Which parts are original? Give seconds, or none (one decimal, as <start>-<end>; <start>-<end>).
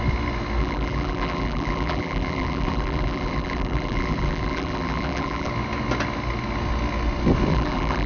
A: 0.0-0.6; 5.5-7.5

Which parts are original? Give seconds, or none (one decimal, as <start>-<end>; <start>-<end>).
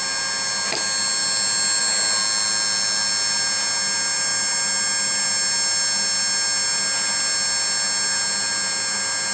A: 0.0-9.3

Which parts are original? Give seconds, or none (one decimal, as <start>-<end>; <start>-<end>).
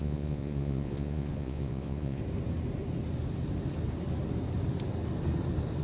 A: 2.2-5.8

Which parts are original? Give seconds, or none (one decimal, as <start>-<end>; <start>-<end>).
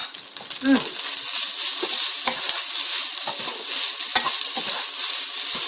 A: 0.0-5.7